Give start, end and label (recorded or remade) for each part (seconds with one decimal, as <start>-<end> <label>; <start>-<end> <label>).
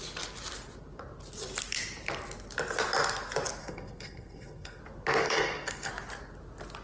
0.0-3.6 recorded; 3.6-4.8 remade; 4.8-5.2 recorded; 5.2-5.9 remade; 5.9-6.8 recorded